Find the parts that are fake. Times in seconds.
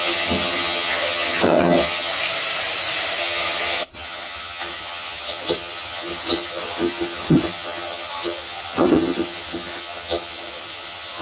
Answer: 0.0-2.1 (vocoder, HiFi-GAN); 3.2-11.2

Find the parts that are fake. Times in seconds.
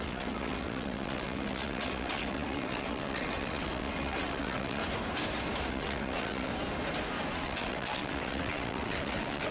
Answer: 0.0-4.8 (vocoder, WaveNeXt); 5.7-6.5; 7.3-9.5